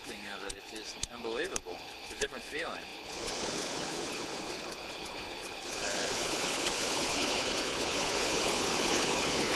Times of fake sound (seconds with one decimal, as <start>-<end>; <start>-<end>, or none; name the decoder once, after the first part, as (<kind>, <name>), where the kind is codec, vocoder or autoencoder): 0.0-9.6 (codec, HILCodec)